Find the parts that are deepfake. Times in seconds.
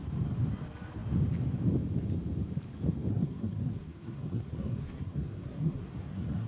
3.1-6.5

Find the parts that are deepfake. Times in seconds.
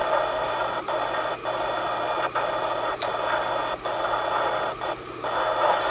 none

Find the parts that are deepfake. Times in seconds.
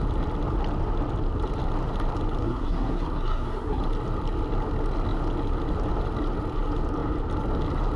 2.4-3.8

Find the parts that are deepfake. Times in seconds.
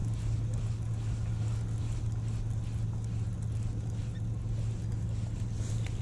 none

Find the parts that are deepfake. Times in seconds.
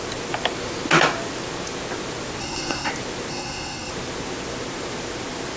2.4-2.9; 3.3-3.9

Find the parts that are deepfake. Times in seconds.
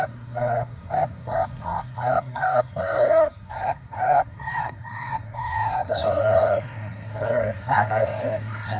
0.0-8.8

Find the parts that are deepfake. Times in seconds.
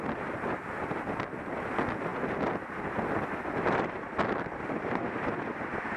2.1-6.0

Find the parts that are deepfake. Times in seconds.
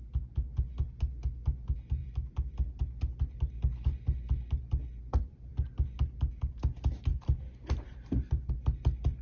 7.1-8.5